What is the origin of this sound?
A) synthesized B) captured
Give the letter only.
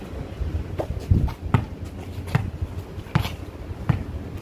B